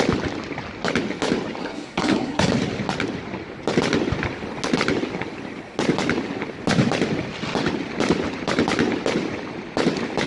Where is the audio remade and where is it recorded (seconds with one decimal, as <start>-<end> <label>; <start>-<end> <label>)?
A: 0.0-1.6 recorded; 1.6-2.5 remade; 2.5-10.3 recorded